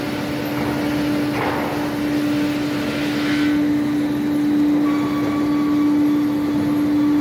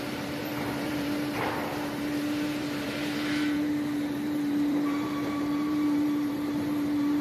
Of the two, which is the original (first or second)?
first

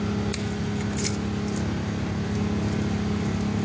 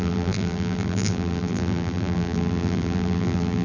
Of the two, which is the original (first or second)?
first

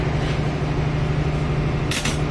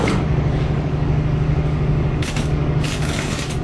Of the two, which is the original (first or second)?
first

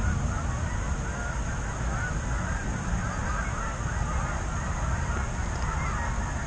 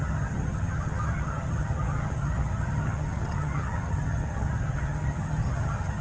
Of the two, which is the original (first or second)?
first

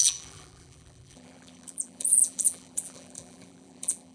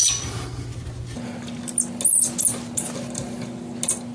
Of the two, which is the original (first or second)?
second